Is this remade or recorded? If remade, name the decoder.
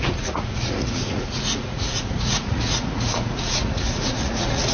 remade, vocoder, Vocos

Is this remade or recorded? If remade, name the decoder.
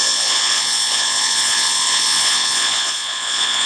remade, vocoder, Vocos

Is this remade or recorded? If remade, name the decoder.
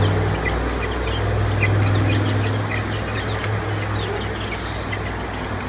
recorded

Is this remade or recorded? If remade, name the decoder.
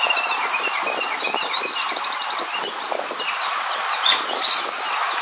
recorded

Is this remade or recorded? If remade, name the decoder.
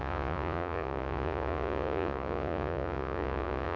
remade, vocoder, Vocos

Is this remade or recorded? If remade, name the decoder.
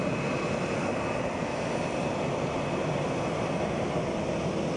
recorded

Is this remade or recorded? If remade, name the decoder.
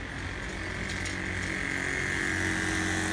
recorded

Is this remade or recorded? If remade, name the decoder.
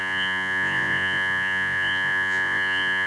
remade, vocoder, Vocos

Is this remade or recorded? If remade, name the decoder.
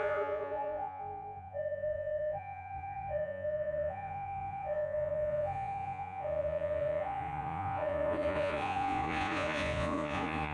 remade, vocoder, Vocos